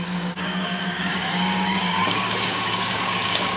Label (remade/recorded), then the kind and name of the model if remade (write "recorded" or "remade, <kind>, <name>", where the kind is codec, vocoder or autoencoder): remade, codec, DAC